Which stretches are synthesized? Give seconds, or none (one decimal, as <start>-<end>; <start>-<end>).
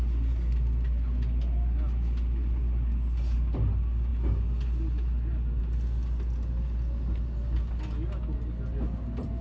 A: none